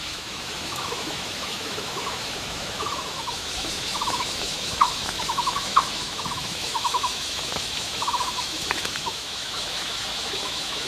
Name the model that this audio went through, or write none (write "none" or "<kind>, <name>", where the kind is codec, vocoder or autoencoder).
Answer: autoencoder, DAC-VAE